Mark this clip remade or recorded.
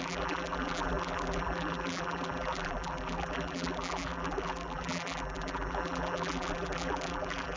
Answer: remade